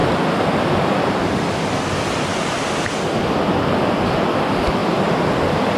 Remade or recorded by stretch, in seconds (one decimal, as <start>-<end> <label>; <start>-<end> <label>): 0.0-4.8 recorded; 4.8-5.8 remade